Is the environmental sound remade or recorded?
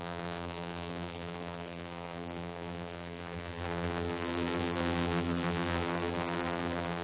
remade